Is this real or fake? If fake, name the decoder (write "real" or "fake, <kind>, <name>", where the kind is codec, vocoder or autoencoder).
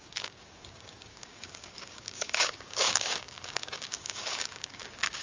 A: fake, codec, DAC